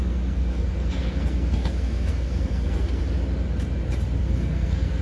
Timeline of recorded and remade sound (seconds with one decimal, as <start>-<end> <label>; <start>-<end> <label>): 0.0-3.0 remade; 3.0-4.2 recorded; 4.2-5.0 remade